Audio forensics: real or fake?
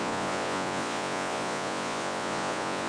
fake